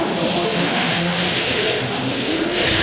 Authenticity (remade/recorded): remade